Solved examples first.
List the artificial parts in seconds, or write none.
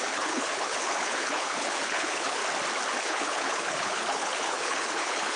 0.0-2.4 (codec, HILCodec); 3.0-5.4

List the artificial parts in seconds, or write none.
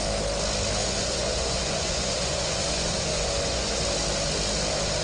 0.8-3.8 (vocoder, Vocos)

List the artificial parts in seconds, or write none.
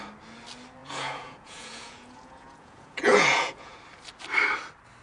0.8-3.8 (vocoder, Vocos)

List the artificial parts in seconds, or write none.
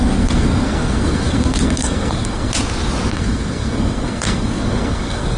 0.0-2.5 (codec, SNAC); 3.1-5.4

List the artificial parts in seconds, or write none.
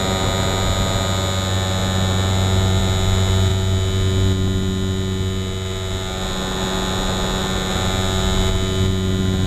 none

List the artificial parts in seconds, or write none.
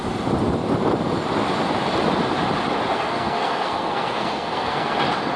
2.9-5.0 (codec, SNAC)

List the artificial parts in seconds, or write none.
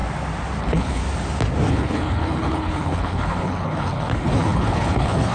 0.6-1.0 (codec, HILCodec); 1.7-5.3